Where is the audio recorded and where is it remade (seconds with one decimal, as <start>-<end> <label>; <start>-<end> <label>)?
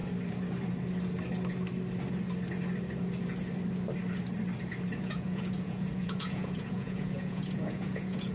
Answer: 0.0-5.0 recorded; 5.0-8.3 remade